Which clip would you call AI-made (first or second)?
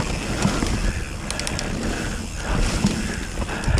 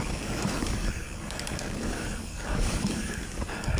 second